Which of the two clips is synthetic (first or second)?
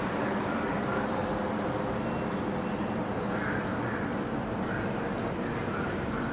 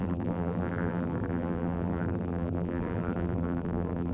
second